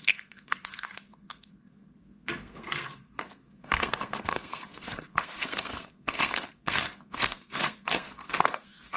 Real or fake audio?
fake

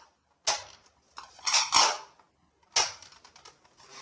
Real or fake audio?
real